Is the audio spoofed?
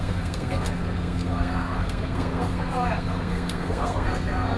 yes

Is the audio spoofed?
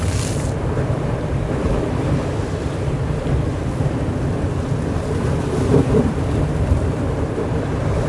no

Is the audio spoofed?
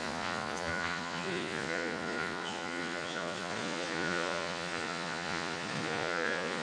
yes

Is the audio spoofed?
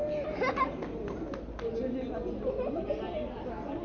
no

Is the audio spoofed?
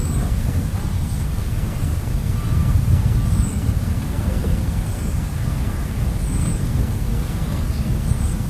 yes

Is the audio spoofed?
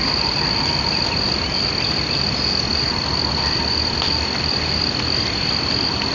no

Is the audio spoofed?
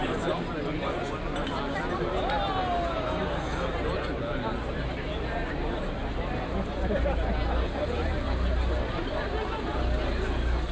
no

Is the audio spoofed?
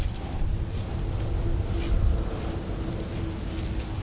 no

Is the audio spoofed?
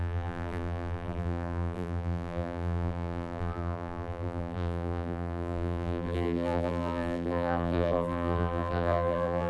yes